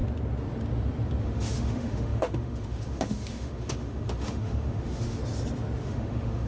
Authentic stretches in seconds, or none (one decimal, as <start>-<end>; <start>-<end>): 0.0-1.2; 5.2-5.8